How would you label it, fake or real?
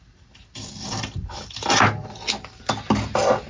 real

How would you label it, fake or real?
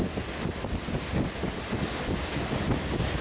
real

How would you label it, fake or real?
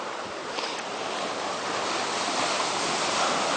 real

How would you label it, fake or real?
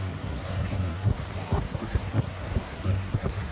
fake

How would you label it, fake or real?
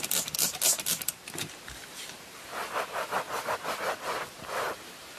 real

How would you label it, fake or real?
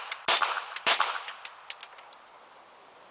real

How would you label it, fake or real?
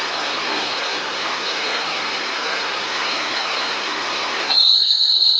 fake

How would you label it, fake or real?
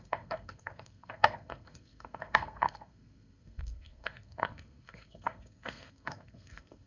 fake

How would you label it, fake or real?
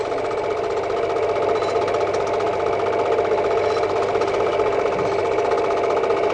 real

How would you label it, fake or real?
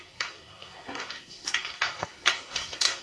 fake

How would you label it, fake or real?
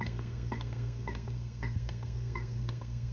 fake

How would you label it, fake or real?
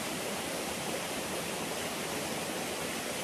real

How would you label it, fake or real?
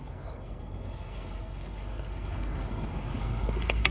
fake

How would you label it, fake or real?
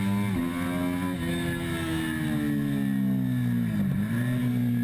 real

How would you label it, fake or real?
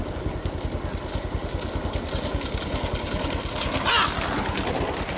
real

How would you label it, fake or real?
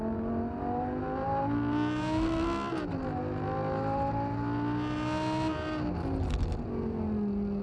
real